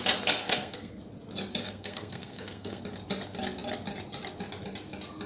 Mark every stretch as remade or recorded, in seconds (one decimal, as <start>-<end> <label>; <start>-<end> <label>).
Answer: 0.0-0.4 recorded; 0.4-1.0 remade; 1.0-1.6 recorded; 1.6-2.8 remade; 2.8-5.3 recorded